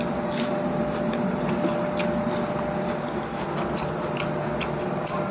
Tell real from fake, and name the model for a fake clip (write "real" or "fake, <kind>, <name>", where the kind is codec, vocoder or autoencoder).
real